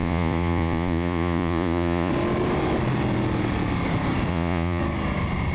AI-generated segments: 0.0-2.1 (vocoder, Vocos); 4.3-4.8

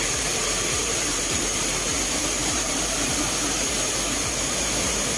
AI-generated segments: 0.8-1.4 (vocoder, BigVGAN v2); 2.4-3.2

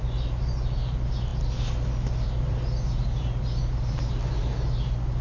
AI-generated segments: none

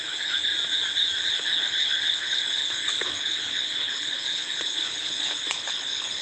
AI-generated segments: 0.0-0.5 (codec, HILCodec); 1.3-6.2

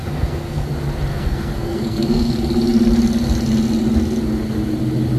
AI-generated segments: 0.0-0.7 (codec, SNAC); 1.1-2.3